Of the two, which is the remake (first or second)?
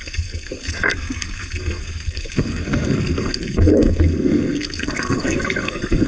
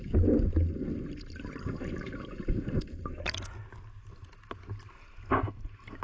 first